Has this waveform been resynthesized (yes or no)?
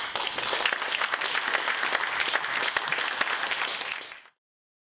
no